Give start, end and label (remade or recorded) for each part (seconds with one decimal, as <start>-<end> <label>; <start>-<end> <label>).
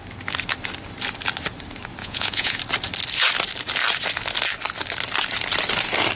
0.0-2.0 recorded; 2.0-2.6 remade; 2.6-6.2 recorded